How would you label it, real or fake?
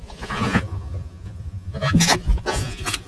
fake